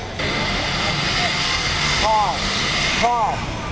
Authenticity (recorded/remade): recorded